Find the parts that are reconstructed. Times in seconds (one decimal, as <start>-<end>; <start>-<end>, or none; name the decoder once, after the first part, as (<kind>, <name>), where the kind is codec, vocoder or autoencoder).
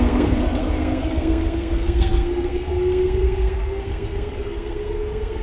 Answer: 0.0-5.4 (codec, SNAC)